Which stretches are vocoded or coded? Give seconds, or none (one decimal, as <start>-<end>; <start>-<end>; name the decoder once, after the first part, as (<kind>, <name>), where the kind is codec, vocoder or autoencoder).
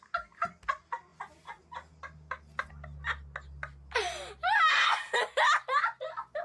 4.7-5.2 (codec, SNAC)